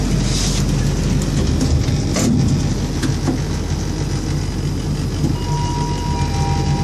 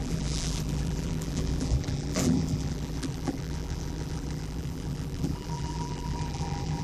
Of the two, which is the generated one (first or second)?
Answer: second